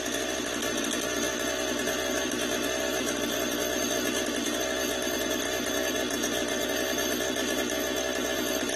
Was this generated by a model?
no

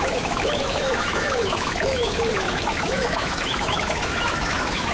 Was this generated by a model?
yes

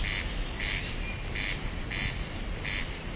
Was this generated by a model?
no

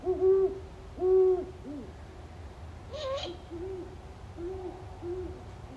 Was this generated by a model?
no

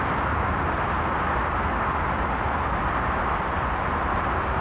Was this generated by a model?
no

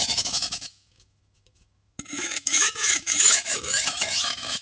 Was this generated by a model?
yes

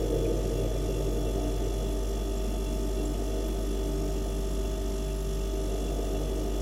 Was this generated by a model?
no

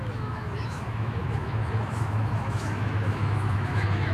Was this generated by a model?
yes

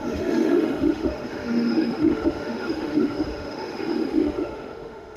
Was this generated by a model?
yes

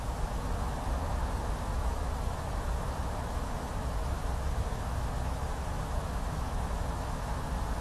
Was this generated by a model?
yes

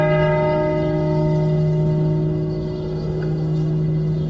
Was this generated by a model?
yes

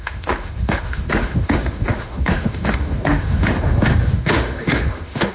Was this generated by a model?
yes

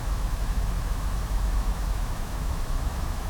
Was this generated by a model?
yes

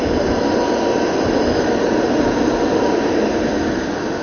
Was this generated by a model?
no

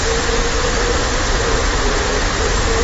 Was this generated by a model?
no